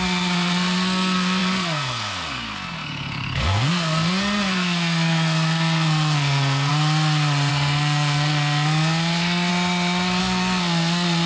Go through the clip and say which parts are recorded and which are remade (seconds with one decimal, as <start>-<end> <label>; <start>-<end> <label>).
0.0-6.7 remade; 6.7-7.5 recorded; 7.5-9.5 remade; 9.5-10.2 recorded; 10.2-11.3 remade